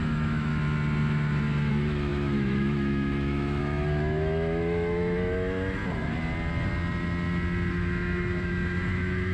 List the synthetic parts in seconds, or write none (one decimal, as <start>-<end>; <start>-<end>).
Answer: 0.0-0.5; 1.7-5.8; 7.7-9.3